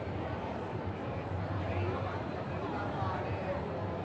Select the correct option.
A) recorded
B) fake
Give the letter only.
B